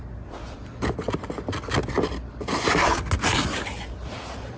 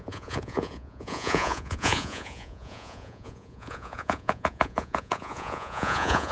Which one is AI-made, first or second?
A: second